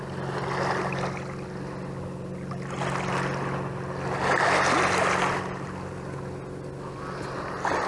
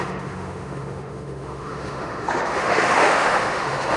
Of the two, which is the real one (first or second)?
first